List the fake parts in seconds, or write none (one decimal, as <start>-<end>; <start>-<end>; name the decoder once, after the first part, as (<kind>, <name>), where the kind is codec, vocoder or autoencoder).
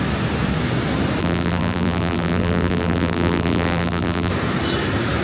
1.2-4.3 (vocoder, BigVGAN v2)